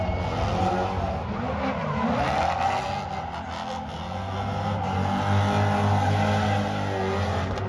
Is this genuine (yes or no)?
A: yes